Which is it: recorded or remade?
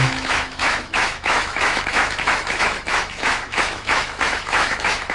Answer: remade